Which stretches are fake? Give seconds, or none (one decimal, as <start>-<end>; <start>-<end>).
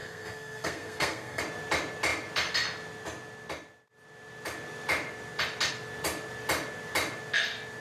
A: 0.0-1.4